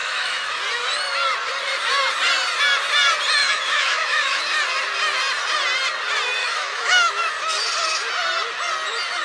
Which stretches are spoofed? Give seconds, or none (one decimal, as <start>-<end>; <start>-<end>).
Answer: 0.0-0.6; 3.4-4.4; 6.4-7.3